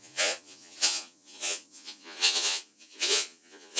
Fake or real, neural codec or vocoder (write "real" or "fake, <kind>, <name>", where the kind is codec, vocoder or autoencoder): fake, vocoder, Vocos